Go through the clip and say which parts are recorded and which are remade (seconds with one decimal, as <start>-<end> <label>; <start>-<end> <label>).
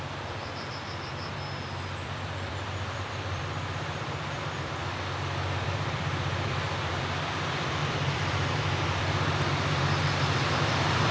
0.0-4.8 remade; 4.8-5.6 recorded; 5.6-11.1 remade